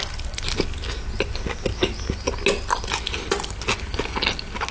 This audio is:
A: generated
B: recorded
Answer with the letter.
B